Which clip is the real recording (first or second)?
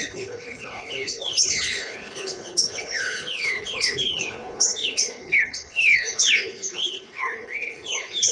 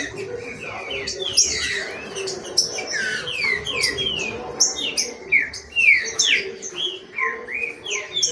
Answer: second